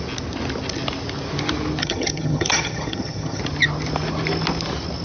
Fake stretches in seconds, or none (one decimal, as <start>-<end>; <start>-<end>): 1.8-3.4